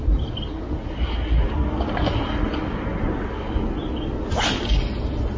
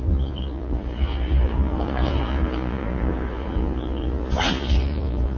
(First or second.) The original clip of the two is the first